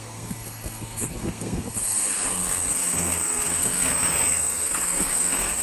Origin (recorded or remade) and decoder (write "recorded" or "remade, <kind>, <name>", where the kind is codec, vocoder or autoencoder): remade, codec, SNAC